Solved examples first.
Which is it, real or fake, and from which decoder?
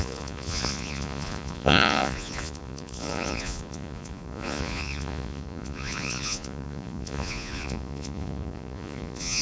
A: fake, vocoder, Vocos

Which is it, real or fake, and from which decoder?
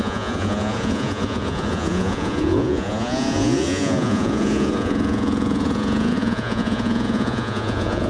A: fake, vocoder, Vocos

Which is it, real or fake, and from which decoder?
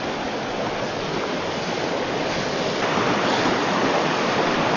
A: real